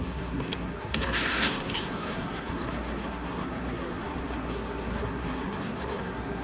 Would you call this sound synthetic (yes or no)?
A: yes